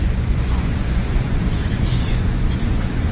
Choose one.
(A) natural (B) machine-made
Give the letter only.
B